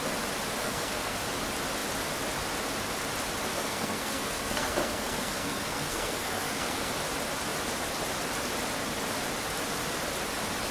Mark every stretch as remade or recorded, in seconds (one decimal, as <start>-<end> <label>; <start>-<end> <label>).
0.0-0.6 recorded; 0.6-1.2 remade; 1.2-3.5 recorded; 3.5-6.9 remade; 6.9-10.7 recorded

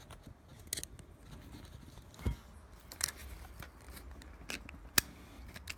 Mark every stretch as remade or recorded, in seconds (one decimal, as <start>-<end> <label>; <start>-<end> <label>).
0.0-5.8 recorded

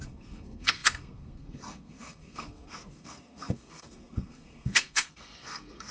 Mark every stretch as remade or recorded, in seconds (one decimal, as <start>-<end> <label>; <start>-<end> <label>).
0.0-5.9 remade

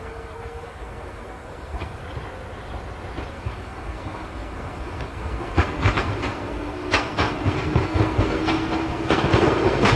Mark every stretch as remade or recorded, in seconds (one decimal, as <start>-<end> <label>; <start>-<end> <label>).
0.0-2.0 remade; 2.0-3.3 recorded; 3.3-10.0 remade

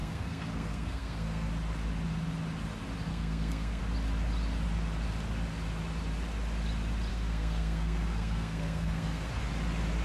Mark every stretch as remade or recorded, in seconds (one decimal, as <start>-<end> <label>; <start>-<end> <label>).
0.0-1.5 remade; 1.5-3.1 recorded; 3.1-3.8 remade; 3.8-7.1 recorded; 7.1-9.4 remade; 9.4-10.0 recorded

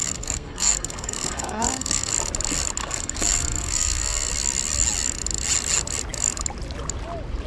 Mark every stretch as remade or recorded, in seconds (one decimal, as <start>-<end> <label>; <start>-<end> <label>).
0.0-2.1 remade; 2.1-2.8 recorded; 2.8-4.3 remade; 4.3-7.5 recorded

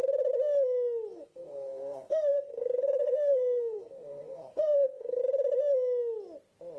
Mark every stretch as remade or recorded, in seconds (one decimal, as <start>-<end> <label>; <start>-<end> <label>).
0.0-1.1 recorded; 1.1-5.2 remade; 5.2-6.8 recorded